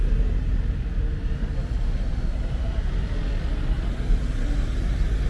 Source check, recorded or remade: recorded